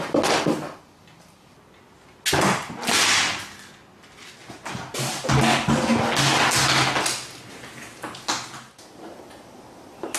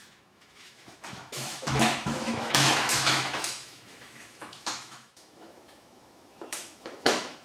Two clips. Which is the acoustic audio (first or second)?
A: first